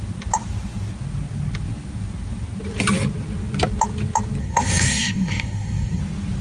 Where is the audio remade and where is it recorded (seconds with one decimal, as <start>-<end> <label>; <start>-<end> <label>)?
0.0-4.4 recorded; 4.4-6.0 remade; 6.0-6.4 recorded